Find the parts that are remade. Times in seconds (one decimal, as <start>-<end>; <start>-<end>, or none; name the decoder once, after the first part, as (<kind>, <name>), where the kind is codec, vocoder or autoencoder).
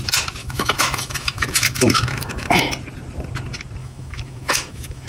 0.4-2.7 (autoencoder, DAC-VAE); 3.8-5.1